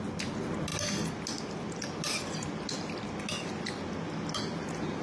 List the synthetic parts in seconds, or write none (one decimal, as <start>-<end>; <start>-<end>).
none